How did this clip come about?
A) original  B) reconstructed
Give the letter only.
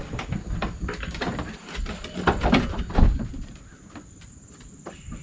A